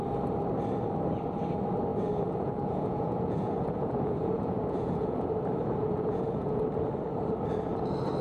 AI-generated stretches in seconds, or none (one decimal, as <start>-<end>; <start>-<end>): 1.9-5.3; 5.8-6.6